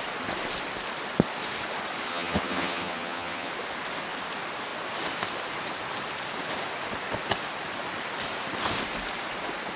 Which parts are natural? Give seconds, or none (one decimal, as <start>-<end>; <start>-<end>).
0.0-2.1; 3.5-9.8